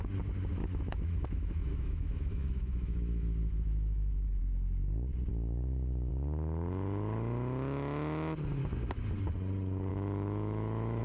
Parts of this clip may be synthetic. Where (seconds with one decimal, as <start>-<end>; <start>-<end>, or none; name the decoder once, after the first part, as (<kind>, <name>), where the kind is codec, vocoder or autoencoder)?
0.6-4.4 (autoencoder, DAC-VAE); 5.3-6.1; 9.9-11.0